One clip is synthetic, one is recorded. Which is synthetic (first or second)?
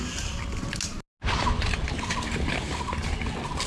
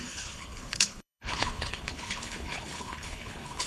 second